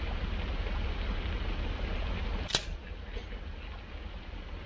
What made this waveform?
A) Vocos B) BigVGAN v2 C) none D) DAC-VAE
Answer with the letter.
C